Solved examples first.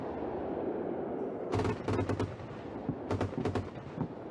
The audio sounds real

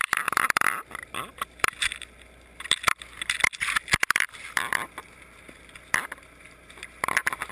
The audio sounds fake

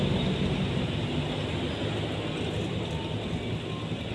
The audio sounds real